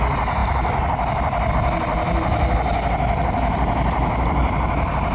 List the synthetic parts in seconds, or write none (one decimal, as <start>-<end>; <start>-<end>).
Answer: none